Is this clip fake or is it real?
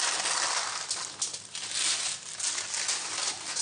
real